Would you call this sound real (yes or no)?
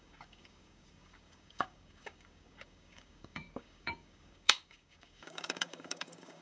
no